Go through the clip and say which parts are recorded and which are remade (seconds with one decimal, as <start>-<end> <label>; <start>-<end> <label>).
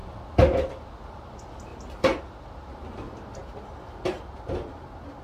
0.0-5.2 recorded